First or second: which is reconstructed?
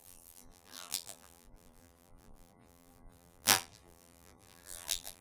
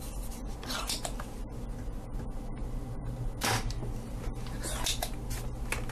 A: first